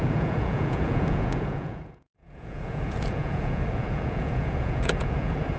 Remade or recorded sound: remade